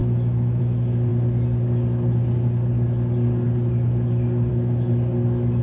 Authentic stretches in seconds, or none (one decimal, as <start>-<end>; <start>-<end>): 0.0-5.6